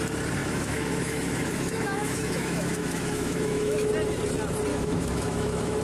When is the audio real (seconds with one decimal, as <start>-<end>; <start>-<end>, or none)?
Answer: 0.0-0.4; 3.9-4.7